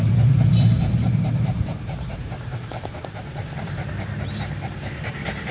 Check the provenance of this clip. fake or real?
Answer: fake